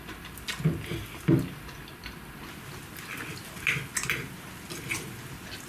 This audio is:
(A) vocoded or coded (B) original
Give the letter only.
B